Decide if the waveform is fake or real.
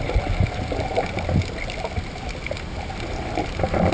real